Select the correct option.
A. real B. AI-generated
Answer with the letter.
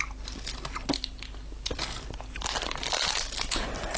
A